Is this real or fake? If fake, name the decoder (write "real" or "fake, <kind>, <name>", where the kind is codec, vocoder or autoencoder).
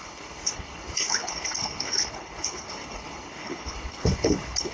fake, codec, HILCodec